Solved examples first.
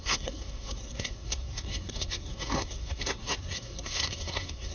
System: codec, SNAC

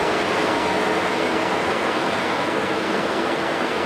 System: codec, SNAC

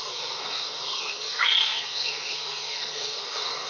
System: codec, SNAC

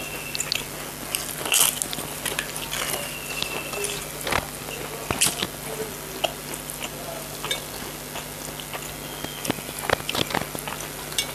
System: none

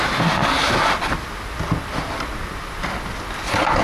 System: none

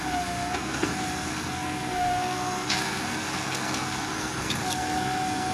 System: codec, SNAC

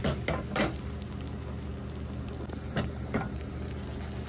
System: none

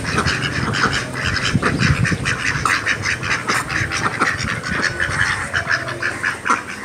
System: none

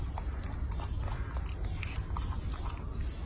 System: none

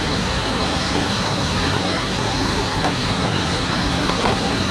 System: codec, SNAC